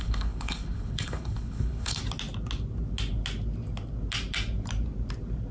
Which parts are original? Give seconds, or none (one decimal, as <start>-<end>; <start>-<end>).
2.0-5.5